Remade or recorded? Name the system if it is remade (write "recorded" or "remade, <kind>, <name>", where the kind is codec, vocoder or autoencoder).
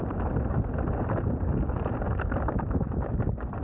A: recorded